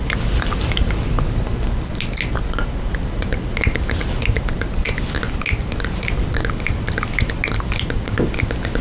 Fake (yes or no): no